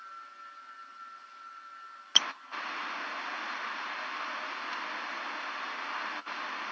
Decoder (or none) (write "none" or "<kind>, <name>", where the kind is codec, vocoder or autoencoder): none